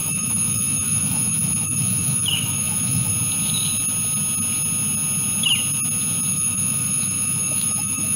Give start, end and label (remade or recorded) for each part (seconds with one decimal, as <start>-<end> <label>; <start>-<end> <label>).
0.0-3.1 remade; 3.1-6.3 recorded; 6.3-8.2 remade